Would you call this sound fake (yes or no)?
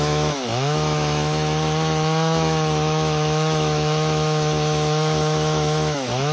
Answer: yes